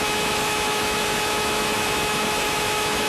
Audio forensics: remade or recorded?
remade